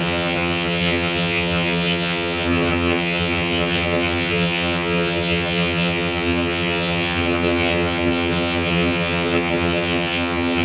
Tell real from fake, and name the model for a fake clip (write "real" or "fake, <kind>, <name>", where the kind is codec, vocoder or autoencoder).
fake, vocoder, HiFi-GAN